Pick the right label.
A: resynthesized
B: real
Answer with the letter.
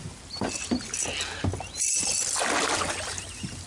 B